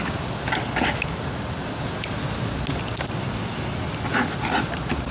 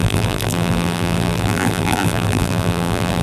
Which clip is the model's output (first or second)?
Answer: second